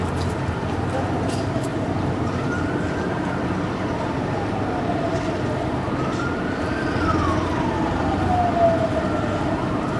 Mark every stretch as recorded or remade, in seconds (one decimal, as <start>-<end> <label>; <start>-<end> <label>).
0.0-1.7 recorded; 1.7-2.5 remade; 2.5-10.0 recorded